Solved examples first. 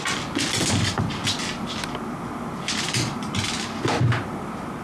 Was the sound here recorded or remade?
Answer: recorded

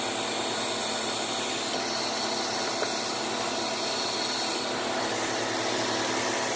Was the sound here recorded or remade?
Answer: recorded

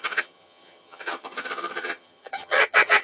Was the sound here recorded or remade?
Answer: remade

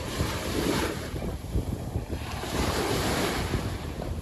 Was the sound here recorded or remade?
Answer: remade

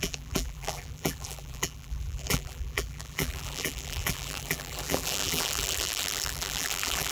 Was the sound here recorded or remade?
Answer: remade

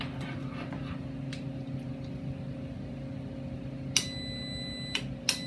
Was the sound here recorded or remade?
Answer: recorded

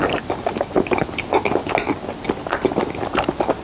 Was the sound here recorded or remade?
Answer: recorded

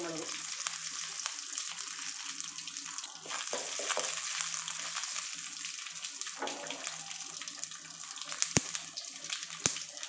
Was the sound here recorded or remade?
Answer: recorded